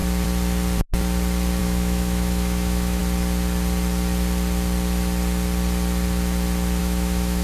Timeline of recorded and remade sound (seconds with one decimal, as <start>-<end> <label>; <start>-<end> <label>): 0.0-1.6 recorded; 1.6-3.0 remade; 3.0-6.8 recorded; 6.8-7.4 remade

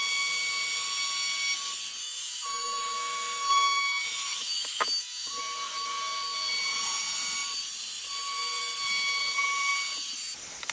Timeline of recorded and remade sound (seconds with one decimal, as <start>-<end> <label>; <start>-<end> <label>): 0.0-2.0 recorded; 2.0-5.4 remade; 5.4-10.7 recorded

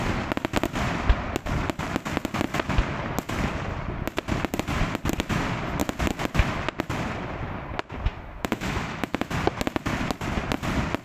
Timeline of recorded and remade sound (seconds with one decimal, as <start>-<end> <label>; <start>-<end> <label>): 0.0-8.1 recorded; 8.1-9.3 remade; 9.3-11.0 recorded

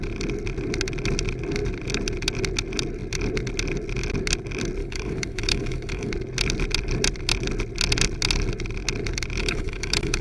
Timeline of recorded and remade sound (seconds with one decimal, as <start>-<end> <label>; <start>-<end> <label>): 0.0-4.8 recorded; 4.8-6.1 remade; 6.1-9.4 recorded; 9.4-10.2 remade